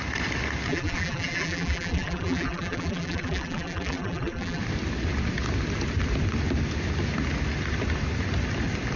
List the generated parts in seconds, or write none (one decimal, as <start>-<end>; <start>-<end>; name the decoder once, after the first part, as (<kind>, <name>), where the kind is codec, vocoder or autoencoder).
0.7-4.6 (vocoder, BigVGAN v2)

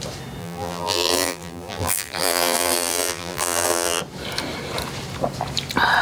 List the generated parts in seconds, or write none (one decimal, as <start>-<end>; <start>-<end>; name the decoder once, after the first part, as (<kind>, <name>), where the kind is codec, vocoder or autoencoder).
0.4-4.0 (vocoder, BigVGAN v2)

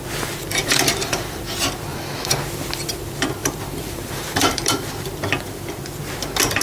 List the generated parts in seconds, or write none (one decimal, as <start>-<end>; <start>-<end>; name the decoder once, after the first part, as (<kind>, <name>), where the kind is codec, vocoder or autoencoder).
0.6-1.4 (vocoder, BigVGAN v2); 1.9-2.4; 3.4-5.1

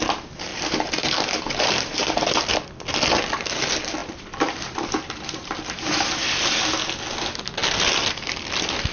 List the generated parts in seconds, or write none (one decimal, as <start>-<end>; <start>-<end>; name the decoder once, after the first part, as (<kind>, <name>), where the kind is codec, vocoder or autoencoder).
0.5-2.4 (vocoder, BigVGAN v2); 4.0-6.1

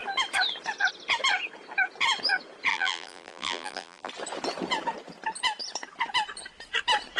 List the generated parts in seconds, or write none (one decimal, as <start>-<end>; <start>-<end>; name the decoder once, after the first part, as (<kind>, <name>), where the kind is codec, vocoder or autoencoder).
2.7-4.1 (vocoder, BigVGAN v2)

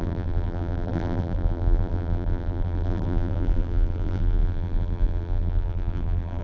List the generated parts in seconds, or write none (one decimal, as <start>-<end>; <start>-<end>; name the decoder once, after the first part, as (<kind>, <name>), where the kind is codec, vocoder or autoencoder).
0.0-6.4 (vocoder, BigVGAN v2)